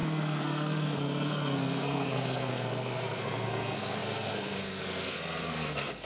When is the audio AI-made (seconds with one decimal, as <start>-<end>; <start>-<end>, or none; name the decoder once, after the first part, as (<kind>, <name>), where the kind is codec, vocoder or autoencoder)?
0.0-6.1 (codec, SNAC)